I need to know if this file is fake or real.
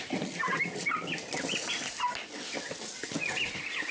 real